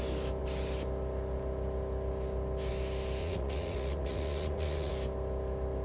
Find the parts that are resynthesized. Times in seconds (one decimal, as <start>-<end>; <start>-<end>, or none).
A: 3.2-4.9